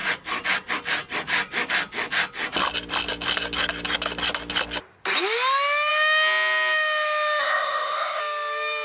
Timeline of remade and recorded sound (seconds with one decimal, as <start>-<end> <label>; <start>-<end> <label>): 0.0-7.4 recorded; 7.4-8.2 remade; 8.2-8.8 recorded

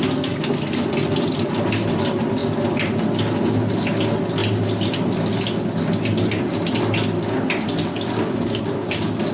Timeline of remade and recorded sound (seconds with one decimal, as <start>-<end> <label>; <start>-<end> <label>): 0.0-7.9 recorded; 7.9-8.6 remade; 8.6-9.3 recorded

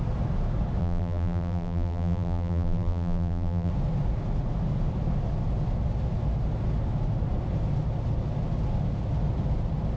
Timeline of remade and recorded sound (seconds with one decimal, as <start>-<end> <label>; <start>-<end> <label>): 0.0-0.8 recorded; 0.8-3.7 remade; 3.7-10.0 recorded

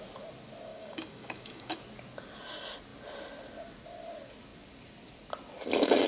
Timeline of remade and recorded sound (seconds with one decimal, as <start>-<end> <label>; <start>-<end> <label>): 0.0-0.7 recorded; 0.7-1.8 remade; 1.8-6.1 recorded

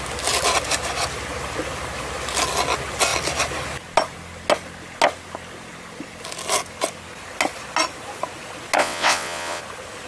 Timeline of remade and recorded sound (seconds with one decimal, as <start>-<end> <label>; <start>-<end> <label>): 0.0-8.8 recorded; 8.8-9.6 remade; 9.6-10.1 recorded

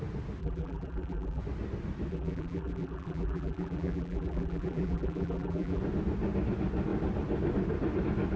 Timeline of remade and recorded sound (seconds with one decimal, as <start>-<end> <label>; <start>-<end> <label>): 0.0-0.4 recorded; 0.4-1.4 remade; 1.4-2.1 recorded; 2.1-5.8 remade; 5.8-8.4 recorded

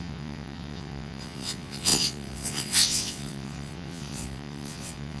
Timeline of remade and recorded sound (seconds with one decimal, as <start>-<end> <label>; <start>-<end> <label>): 0.0-5.2 remade

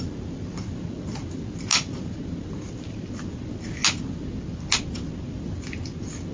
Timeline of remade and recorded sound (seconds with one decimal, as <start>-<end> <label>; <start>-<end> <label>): 0.0-6.3 recorded